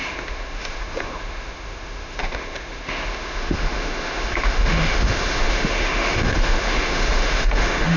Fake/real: fake